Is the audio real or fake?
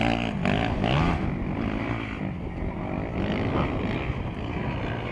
real